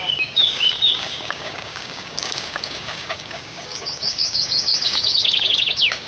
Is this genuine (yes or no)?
no